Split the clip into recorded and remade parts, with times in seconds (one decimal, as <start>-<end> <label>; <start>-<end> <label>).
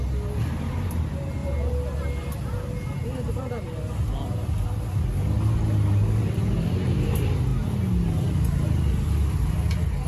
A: 0.0-10.1 recorded